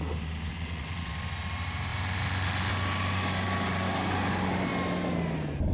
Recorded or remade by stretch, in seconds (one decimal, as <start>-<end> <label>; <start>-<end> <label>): 0.0-0.5 recorded; 0.5-1.1 remade; 1.1-5.7 recorded